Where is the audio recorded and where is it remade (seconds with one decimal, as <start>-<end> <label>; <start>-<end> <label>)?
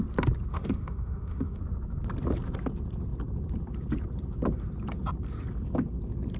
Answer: 0.0-0.5 recorded; 0.5-1.6 remade; 1.6-6.4 recorded